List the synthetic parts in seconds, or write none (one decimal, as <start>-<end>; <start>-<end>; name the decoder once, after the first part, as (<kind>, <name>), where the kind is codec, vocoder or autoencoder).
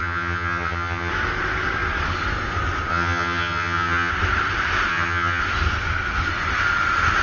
0.0-1.1 (vocoder, HiFi-GAN); 2.9-4.1; 4.9-5.4